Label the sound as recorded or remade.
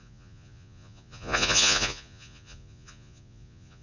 remade